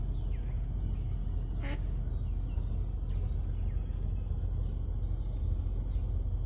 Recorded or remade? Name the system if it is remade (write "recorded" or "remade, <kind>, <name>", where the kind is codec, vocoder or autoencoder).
recorded